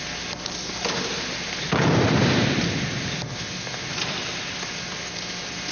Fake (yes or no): no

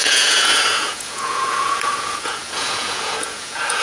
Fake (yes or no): yes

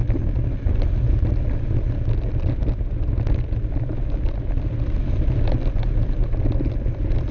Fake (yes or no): no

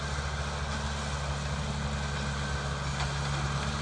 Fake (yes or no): no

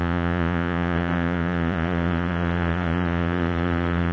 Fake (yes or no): yes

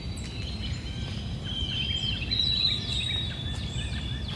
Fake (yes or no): no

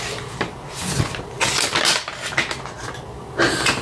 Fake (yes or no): no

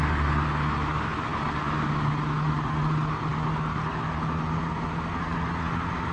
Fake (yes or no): no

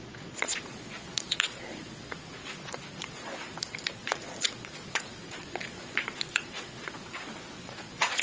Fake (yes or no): yes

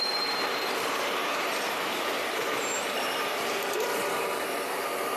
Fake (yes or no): yes